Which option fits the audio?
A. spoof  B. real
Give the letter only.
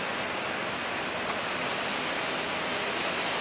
B